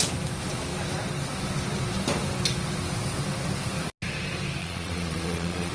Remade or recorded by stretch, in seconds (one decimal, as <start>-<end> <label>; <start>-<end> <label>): 0.0-4.6 recorded; 4.6-5.7 remade